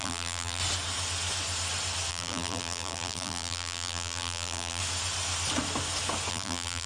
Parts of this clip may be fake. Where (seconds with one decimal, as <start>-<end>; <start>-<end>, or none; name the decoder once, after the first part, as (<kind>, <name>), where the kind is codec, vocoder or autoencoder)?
0.0-0.6 (vocoder, BigVGAN v2); 2.1-4.8; 6.3-6.9